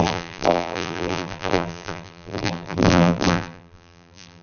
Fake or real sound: fake